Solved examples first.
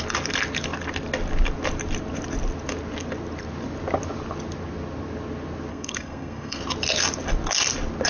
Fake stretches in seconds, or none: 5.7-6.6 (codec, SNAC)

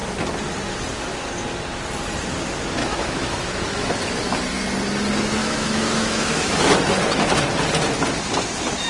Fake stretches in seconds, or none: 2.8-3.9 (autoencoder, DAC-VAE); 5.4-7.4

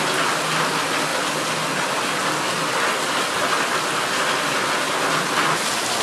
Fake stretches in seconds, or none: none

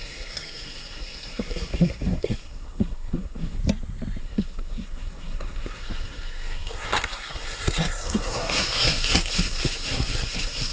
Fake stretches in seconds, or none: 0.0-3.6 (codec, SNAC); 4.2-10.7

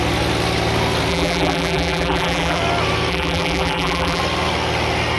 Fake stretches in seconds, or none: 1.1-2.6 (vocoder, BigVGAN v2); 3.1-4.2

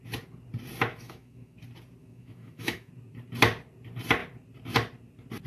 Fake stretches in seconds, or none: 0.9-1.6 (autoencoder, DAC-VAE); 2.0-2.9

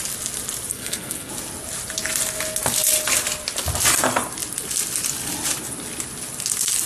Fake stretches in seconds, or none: 0.7-1.3 (codec, SNAC)